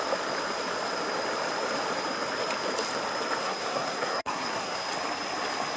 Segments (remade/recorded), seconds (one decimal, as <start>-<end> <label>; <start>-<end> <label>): 0.0-3.4 recorded; 3.4-4.9 remade; 4.9-5.8 recorded